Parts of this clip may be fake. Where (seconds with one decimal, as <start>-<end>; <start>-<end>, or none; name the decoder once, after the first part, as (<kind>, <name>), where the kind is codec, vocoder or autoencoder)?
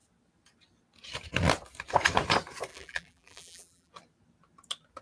2.7-3.9 (vocoder, BigVGAN v2)